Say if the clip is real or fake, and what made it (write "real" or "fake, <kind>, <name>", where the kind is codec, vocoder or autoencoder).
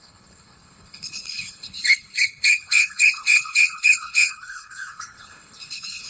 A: fake, codec, HILCodec